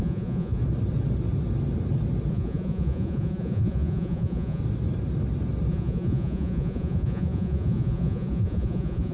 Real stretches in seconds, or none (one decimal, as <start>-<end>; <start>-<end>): 0.6-2.3; 4.6-5.7